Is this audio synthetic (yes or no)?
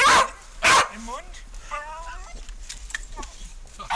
no